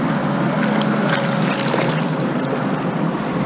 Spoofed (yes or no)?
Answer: no